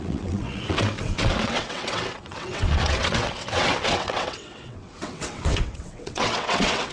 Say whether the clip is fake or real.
fake